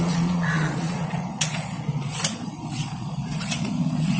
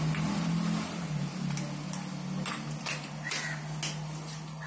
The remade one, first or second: first